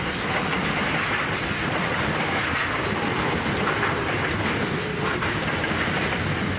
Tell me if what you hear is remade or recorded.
recorded